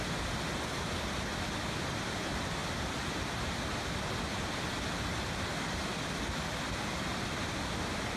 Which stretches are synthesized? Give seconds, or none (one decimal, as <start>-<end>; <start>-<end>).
none